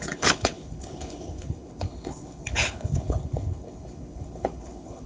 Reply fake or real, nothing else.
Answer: fake